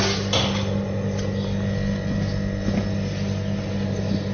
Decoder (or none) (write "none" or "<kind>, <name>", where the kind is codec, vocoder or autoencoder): none